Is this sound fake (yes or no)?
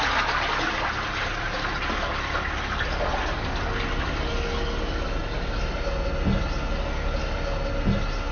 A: no